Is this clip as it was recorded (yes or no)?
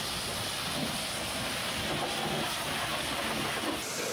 yes